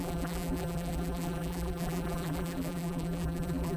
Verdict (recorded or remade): remade